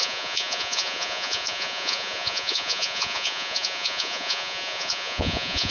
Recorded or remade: remade